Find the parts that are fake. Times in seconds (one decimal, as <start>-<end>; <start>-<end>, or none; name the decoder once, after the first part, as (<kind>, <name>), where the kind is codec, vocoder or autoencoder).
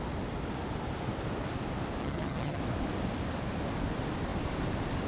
2.0-2.6 (vocoder, HiFi-GAN)